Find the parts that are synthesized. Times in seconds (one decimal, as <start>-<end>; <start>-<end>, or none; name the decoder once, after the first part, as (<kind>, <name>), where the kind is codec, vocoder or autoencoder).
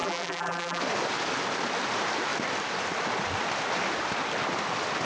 0.0-0.8 (vocoder, BigVGAN v2)